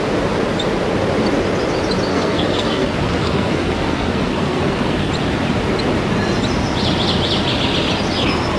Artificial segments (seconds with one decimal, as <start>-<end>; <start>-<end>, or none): 2.1-5.1